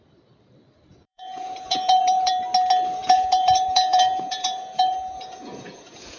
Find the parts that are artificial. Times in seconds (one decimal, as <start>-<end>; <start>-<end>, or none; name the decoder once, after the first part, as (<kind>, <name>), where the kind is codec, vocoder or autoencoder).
0.9-2.3 (vocoder, Vocos); 3.0-6.2